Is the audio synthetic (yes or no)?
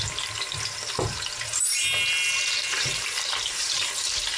yes